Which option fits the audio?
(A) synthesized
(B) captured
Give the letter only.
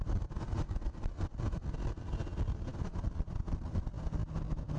B